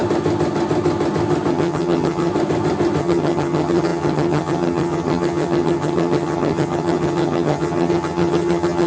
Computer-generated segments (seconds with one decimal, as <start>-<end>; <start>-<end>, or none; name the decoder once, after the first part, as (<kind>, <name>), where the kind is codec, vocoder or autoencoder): 1.5-2.3 (vocoder, HiFi-GAN); 3.0-8.9